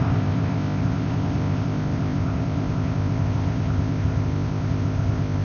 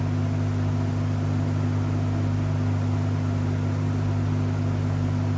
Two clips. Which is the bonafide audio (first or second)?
second